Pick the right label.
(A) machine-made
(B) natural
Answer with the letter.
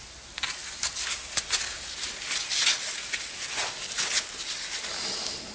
B